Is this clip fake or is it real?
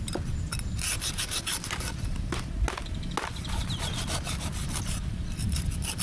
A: real